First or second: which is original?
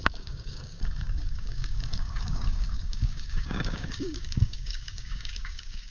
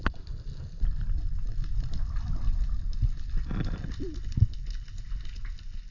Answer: second